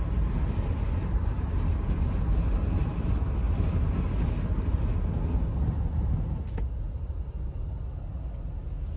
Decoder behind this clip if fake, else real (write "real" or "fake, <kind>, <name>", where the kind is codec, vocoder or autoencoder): real